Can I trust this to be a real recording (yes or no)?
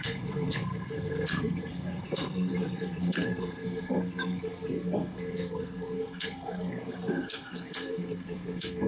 no